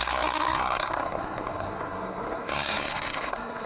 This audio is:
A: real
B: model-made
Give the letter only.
B